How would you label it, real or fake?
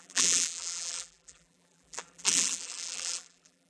fake